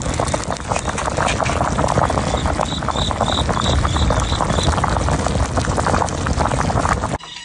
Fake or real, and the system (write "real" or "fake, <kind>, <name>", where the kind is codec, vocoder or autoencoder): real